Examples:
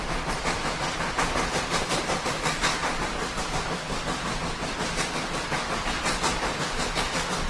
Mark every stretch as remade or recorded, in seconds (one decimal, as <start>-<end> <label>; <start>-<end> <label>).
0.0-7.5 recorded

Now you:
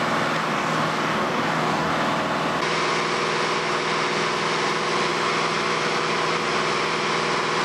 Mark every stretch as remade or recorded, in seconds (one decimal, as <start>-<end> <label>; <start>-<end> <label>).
0.0-0.4 recorded; 0.4-1.9 remade; 1.9-7.6 recorded

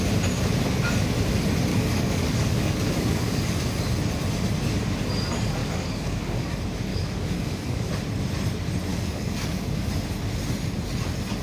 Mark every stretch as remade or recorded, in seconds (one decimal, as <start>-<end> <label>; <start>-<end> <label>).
0.0-1.7 recorded; 1.7-3.6 remade; 3.6-5.6 recorded; 5.6-6.5 remade; 6.5-6.9 recorded; 6.9-7.9 remade; 7.9-8.9 recorded; 8.9-9.9 remade; 9.9-11.4 recorded

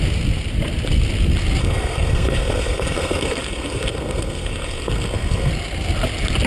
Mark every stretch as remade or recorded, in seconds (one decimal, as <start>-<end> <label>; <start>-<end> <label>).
0.0-1.6 recorded; 1.6-5.5 remade; 5.5-6.5 recorded